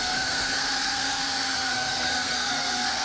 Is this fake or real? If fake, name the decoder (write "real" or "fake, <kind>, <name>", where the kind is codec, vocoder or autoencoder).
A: fake, codec, SNAC